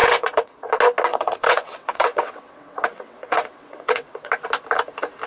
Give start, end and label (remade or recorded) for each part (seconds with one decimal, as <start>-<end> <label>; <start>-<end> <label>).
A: 0.0-0.7 remade; 0.7-1.1 recorded; 1.1-4.3 remade; 4.3-5.3 recorded